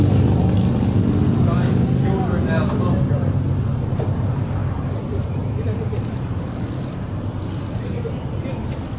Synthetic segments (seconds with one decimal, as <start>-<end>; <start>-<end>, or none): 4.6-6.2